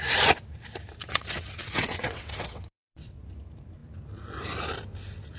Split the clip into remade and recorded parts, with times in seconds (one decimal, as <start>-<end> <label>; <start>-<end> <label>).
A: 0.0-1.0 recorded; 1.0-3.2 remade; 3.2-5.4 recorded